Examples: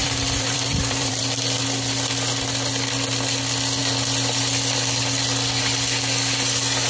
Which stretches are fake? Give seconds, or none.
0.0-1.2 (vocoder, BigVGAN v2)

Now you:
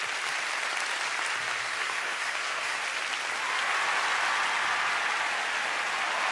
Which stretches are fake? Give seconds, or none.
1.6-2.8 (codec, SNAC)

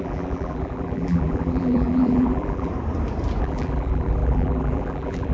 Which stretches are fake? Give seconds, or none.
0.0-2.7 (vocoder, BigVGAN v2); 3.4-5.3